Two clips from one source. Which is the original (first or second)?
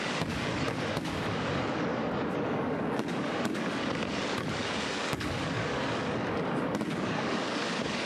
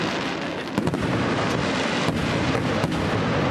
second